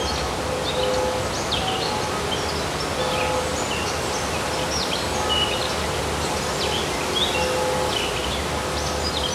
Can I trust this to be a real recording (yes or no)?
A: yes